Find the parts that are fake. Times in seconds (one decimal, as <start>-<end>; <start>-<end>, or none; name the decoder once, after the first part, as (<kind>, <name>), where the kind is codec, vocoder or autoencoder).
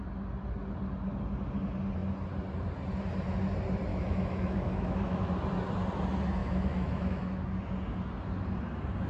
3.9-5.3 (autoencoder, DAC-VAE); 6.4-7.4